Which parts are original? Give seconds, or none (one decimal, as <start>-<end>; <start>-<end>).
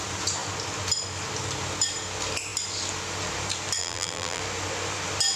0.0-3.8; 4.4-5.4